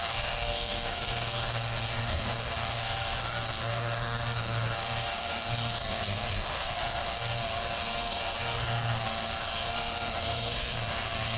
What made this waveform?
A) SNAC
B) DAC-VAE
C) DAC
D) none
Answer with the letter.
A